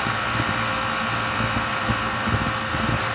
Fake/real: real